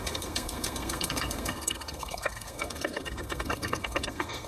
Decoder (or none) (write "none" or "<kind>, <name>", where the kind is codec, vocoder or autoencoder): codec, SNAC